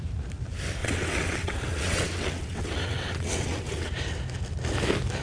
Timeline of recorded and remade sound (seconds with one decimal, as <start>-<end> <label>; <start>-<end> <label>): 0.0-0.8 recorded; 0.8-3.9 remade; 3.9-5.2 recorded